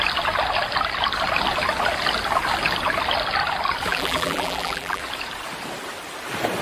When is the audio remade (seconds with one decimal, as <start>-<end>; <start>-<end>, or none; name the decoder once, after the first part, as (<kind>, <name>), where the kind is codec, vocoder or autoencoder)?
3.9-5.0 (vocoder, BigVGAN v2)